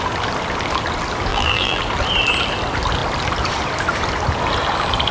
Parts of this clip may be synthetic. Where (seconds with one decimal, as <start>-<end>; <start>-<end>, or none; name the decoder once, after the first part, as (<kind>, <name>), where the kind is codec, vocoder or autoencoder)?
1.3-1.8 (vocoder, BigVGAN v2)